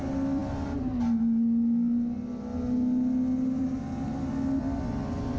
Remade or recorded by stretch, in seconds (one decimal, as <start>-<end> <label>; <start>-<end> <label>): 0.0-5.4 recorded